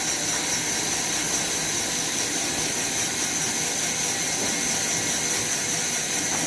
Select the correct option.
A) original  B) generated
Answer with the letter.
A